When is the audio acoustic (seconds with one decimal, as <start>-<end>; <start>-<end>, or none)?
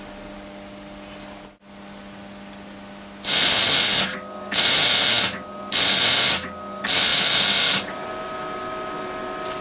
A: 0.0-9.6